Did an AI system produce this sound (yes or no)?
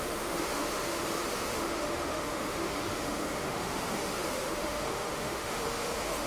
yes